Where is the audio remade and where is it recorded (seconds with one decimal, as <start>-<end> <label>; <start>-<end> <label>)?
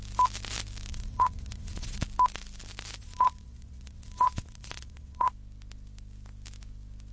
0.0-0.9 recorded; 0.9-2.0 remade; 2.0-3.0 recorded; 3.0-5.3 remade; 5.3-7.1 recorded